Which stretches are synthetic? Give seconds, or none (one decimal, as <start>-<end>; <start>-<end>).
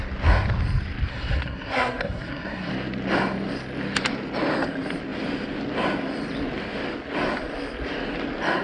1.1-2.7